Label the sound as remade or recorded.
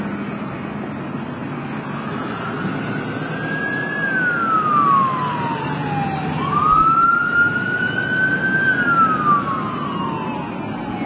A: recorded